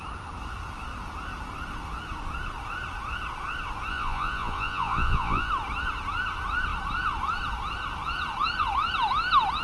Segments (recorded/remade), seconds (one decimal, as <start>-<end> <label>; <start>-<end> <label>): 0.0-3.9 recorded; 3.9-5.5 remade; 5.5-9.6 recorded

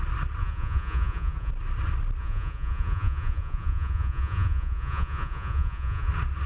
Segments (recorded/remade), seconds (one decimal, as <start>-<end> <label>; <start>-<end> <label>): 0.0-0.4 recorded; 0.4-1.5 remade; 1.5-2.2 recorded; 2.2-6.1 remade; 6.1-6.5 recorded